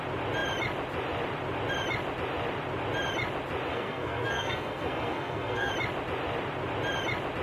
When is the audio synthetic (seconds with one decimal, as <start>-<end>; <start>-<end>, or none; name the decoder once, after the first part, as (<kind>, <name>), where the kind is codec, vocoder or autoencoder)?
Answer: 3.7-5.7 (codec, SNAC)